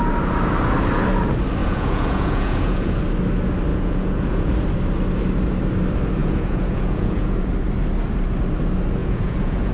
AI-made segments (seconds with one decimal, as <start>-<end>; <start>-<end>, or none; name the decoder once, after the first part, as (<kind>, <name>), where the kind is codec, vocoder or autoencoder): 1.6-3.0 (vocoder, Vocos); 3.7-4.5; 6.2-7.5; 9.0-9.7